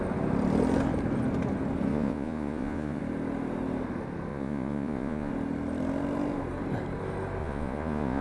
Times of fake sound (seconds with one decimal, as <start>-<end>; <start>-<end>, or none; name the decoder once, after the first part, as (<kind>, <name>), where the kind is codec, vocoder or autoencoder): 1.9-3.0 (vocoder, Vocos); 4.3-5.3; 7.4-8.2

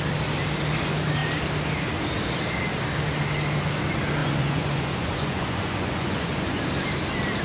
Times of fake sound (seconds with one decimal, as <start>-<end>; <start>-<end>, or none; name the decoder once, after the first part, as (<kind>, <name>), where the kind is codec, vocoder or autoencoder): 4.2-6.6 (vocoder, Vocos)

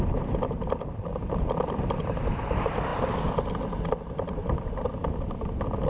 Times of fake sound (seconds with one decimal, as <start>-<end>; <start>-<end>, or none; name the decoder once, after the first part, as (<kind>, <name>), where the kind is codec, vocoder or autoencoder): none

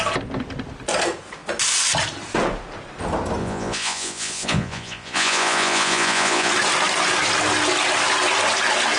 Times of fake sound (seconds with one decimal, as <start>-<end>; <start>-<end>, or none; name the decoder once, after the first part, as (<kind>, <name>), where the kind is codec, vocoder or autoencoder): 3.4-6.5 (vocoder, Vocos)

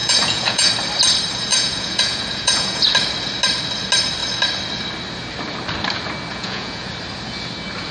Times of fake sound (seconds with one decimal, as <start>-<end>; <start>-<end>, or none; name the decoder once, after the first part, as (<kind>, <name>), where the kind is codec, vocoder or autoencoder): 0.0-0.7 (vocoder, Vocos); 1.5-2.8; 6.3-6.9

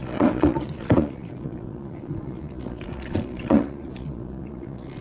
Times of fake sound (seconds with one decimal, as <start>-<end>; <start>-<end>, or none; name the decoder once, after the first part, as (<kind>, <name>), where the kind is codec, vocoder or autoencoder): 0.0-5.0 (vocoder, Vocos)

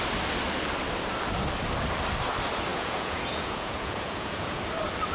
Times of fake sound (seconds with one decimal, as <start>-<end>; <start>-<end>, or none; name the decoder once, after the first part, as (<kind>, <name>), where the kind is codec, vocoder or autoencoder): 2.7-4.6 (vocoder, Vocos)